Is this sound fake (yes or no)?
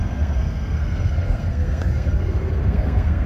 yes